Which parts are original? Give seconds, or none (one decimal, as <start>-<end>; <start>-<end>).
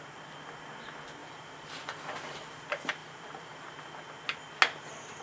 0.0-1.2; 2.4-3.0; 3.6-5.2